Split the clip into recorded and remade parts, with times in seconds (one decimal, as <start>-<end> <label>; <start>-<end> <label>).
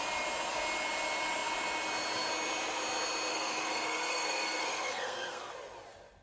0.0-3.3 recorded; 3.3-5.5 remade; 5.5-6.2 recorded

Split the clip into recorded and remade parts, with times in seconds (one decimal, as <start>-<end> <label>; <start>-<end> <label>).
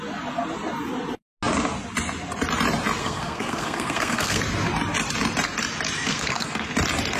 0.0-3.0 recorded; 3.0-4.4 remade; 4.4-6.1 recorded; 6.1-6.7 remade; 6.7-7.2 recorded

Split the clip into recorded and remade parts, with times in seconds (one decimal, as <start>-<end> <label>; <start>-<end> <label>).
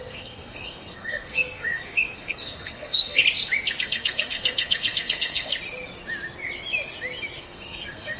0.0-3.2 remade; 3.2-3.8 recorded; 3.8-5.5 remade; 5.5-7.4 recorded; 7.4-8.2 remade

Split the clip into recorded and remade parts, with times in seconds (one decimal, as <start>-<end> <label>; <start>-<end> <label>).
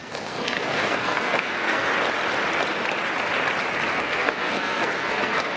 0.0-1.9 remade; 1.9-3.9 recorded; 3.9-5.6 remade